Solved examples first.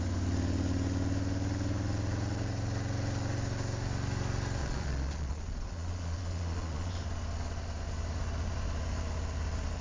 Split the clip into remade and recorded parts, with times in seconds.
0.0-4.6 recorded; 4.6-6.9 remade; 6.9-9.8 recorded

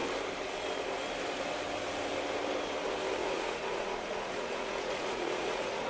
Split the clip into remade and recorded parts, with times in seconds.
0.0-3.2 recorded; 3.2-5.9 remade

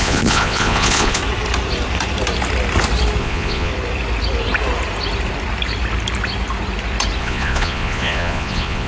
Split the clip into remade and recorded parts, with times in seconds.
0.0-1.2 remade; 1.2-3.2 recorded; 3.2-3.7 remade; 3.7-7.2 recorded; 7.2-8.9 remade

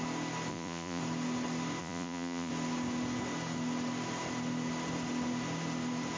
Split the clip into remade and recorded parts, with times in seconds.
0.0-0.5 recorded; 0.5-1.0 remade; 1.0-1.8 recorded; 1.8-2.5 remade; 2.5-6.2 recorded

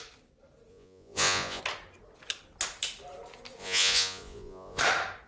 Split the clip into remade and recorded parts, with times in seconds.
0.0-0.7 recorded; 0.7-1.6 remade; 1.6-3.6 recorded; 3.6-4.8 remade; 4.8-5.3 recorded

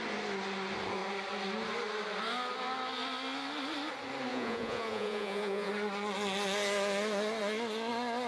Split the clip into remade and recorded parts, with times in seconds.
0.0-4.3 recorded; 4.3-5.7 remade; 5.7-8.3 recorded

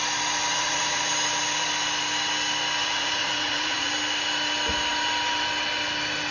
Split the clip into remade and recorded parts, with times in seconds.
0.0-0.5 recorded; 0.5-1.1 remade; 1.1-2.8 recorded; 2.8-3.9 remade; 3.9-6.3 recorded

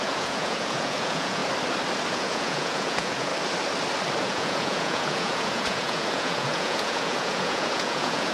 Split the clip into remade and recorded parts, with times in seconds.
0.0-1.4 remade; 1.4-2.1 recorded; 2.1-3.3 remade; 3.3-4.2 recorded; 4.2-8.3 remade